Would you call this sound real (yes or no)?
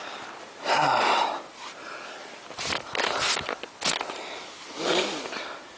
yes